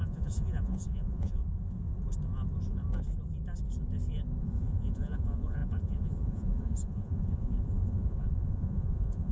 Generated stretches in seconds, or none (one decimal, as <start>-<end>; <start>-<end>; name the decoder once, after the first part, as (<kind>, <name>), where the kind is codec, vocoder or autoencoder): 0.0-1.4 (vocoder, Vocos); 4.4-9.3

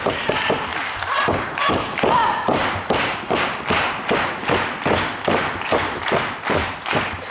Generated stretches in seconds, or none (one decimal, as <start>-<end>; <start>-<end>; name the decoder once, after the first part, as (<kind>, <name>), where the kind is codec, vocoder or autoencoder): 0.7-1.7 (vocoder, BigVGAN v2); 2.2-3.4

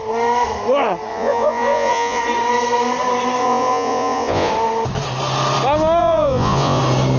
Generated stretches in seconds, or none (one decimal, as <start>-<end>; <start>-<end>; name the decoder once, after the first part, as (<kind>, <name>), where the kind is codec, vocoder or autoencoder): 1.1-2.2 (vocoder, Vocos); 3.4-4.5; 6.0-6.8

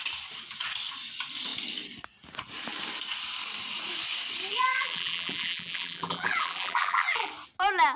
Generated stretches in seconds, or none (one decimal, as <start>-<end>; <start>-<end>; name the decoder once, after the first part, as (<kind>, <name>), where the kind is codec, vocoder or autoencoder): 4.5-7.3 (vocoder, BigVGAN v2)

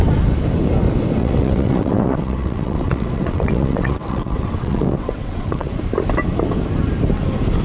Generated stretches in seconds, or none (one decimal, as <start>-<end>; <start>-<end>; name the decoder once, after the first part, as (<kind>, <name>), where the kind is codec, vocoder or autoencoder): 1.2-5.8 (vocoder, WaveNeXt)

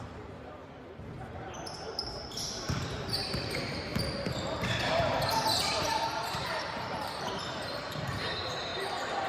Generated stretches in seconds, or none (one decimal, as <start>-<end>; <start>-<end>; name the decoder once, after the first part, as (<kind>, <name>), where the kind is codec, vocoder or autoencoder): 0.0-0.6 (vocoder, BigVGAN v2); 1.8-3.9; 4.8-8.7